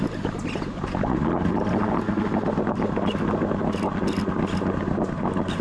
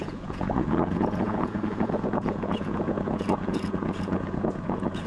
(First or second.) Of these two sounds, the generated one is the second